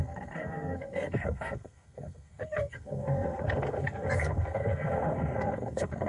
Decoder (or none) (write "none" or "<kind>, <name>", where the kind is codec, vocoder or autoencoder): codec, SNAC